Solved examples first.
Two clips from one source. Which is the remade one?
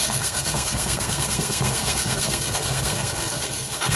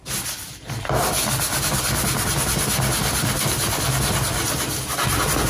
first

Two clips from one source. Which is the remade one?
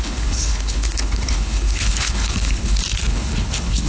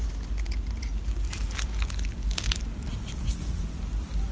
first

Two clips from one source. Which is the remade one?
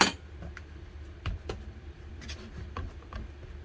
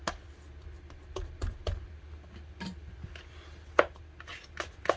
first